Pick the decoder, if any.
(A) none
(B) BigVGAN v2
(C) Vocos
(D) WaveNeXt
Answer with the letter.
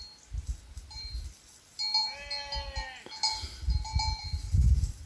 A